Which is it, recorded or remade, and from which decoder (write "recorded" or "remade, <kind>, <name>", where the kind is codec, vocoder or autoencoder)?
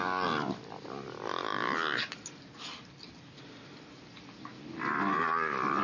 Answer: recorded